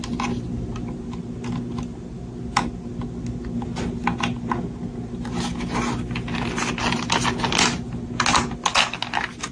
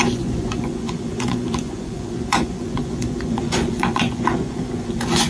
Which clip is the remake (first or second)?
second